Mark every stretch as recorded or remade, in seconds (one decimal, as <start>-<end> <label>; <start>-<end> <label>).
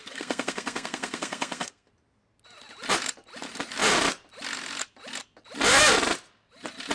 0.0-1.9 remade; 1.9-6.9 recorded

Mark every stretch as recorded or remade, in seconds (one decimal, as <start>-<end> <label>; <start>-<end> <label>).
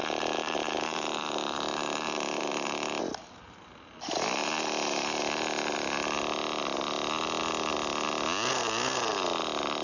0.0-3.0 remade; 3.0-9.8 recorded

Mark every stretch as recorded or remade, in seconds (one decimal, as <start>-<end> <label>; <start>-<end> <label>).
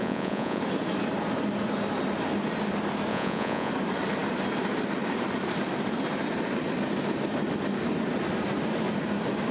0.0-0.6 remade; 0.6-3.1 recorded; 3.1-3.7 remade; 3.7-9.5 recorded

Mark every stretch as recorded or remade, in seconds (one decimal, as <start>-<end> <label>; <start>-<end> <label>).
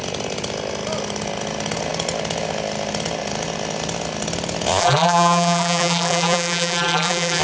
0.0-4.8 recorded; 4.8-7.4 remade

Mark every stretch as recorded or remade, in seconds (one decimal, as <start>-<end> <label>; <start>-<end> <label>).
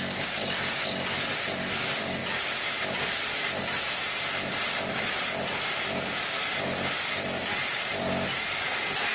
0.0-9.1 recorded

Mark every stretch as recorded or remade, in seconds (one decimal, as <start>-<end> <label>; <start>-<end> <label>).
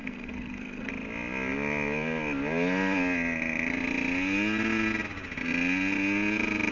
0.0-0.9 remade; 0.9-6.7 recorded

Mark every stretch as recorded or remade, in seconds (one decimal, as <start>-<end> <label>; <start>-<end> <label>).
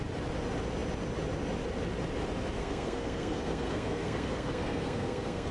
0.0-2.6 recorded; 2.6-5.5 remade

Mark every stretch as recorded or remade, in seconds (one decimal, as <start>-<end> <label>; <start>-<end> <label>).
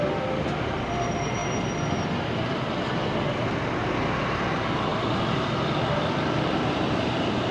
0.0-7.5 recorded